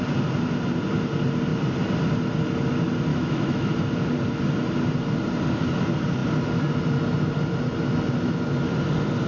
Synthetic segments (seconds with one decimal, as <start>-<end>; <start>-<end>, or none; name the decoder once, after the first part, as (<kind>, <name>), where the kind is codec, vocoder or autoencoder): 3.1-3.7 (autoencoder, DAC-VAE)